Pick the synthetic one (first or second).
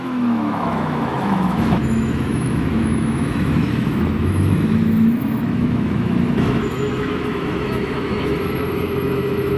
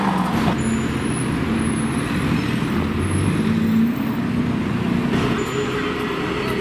first